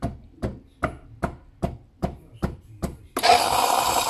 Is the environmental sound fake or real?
real